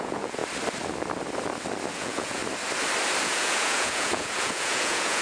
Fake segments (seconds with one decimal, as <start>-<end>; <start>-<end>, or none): 0.0-0.4; 1.9-2.4; 3.2-5.2